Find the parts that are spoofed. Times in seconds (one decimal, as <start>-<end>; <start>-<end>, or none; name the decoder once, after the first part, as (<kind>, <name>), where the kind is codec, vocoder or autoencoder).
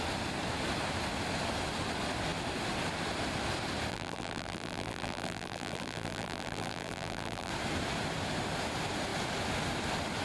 3.9-7.5 (vocoder, BigVGAN v2)